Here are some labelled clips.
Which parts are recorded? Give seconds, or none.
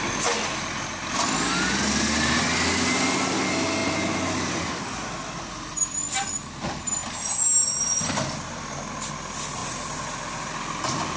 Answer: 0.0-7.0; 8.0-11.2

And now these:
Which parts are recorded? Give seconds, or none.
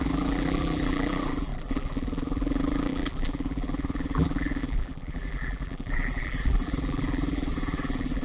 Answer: none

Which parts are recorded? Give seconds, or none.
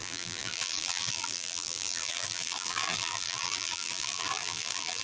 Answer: none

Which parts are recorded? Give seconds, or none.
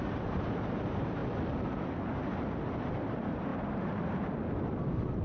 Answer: 1.2-2.9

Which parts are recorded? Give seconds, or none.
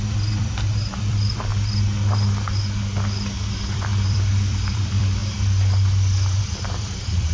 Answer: 1.5-3.5; 5.2-6.4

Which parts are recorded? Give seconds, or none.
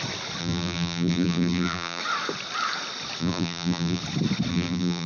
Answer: 0.0-0.4; 2.0-3.2; 4.0-4.5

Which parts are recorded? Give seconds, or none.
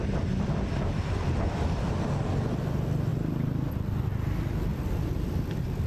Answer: 0.0-4.7